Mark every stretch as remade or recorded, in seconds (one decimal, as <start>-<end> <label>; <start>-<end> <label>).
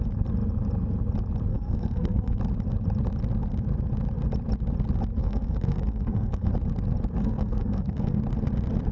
0.0-1.5 recorded; 1.5-2.4 remade; 2.4-5.2 recorded; 5.2-6.5 remade; 6.5-7.2 recorded; 7.2-8.2 remade; 8.2-8.9 recorded